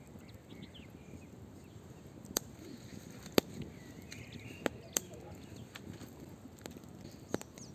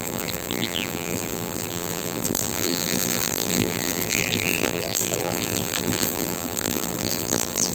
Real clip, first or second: first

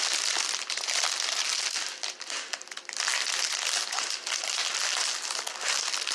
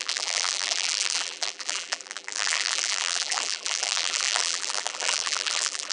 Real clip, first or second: first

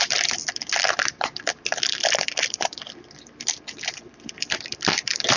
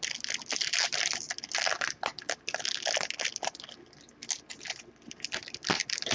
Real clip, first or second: second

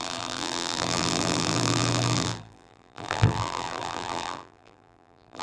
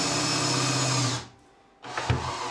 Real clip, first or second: second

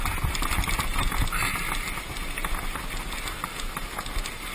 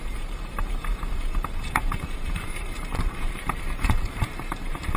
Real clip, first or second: first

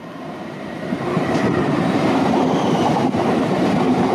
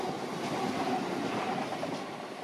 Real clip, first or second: second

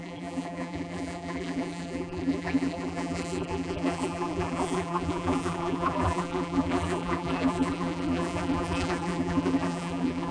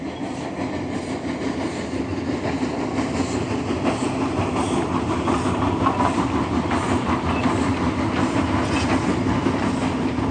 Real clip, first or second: second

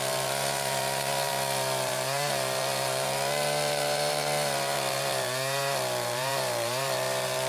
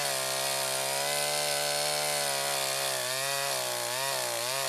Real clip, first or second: second